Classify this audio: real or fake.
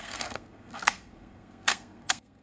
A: fake